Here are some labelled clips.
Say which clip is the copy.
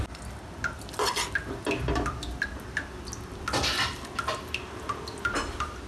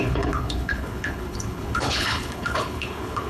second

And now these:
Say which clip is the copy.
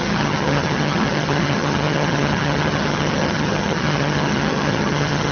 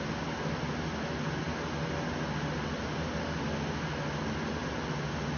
first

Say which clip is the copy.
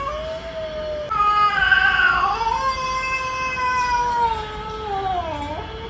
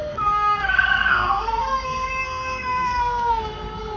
second